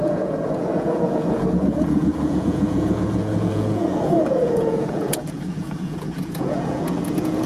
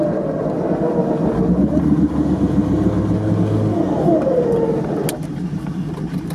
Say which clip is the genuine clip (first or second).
second